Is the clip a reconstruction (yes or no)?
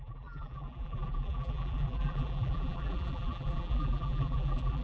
yes